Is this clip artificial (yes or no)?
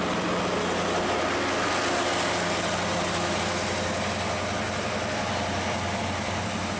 no